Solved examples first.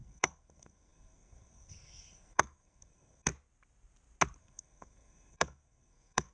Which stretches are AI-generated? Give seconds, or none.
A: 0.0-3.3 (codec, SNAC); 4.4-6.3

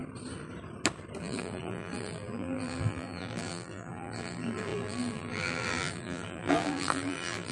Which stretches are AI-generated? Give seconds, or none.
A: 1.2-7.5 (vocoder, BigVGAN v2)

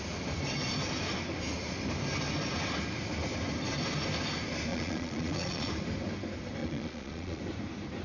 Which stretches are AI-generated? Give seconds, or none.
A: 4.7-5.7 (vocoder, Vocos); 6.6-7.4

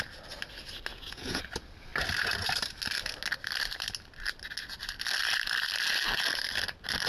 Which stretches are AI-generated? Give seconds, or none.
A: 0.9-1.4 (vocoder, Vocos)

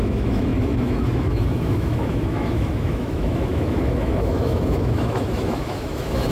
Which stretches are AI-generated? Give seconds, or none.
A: 0.0-6.3 (autoencoder, DAC-VAE)